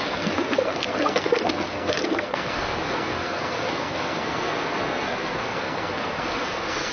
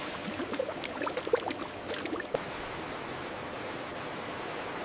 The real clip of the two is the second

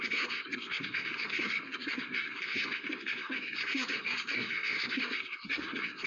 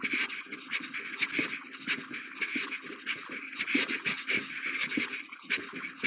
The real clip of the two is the second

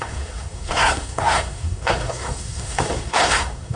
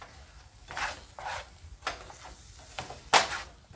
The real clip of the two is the second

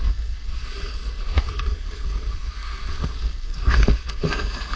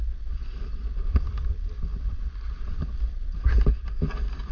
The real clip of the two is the second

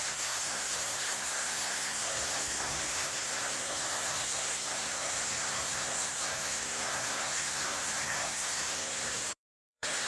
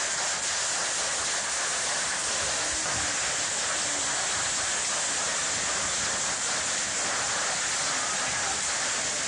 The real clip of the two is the second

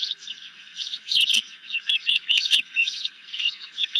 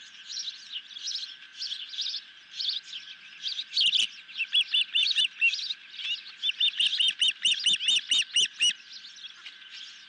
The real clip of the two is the second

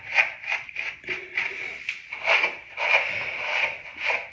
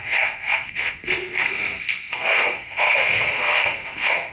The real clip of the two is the first